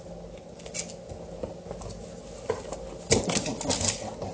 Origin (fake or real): real